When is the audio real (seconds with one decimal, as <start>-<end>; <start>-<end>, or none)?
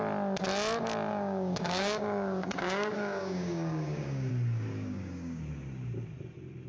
0.0-1.1; 4.3-4.7; 5.4-6.7